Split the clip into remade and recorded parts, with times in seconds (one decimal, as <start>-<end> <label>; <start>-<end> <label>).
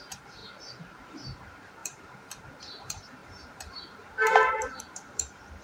0.0-0.4 remade; 0.4-1.1 recorded; 1.1-5.6 remade